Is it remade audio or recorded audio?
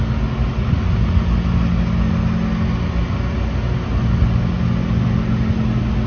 recorded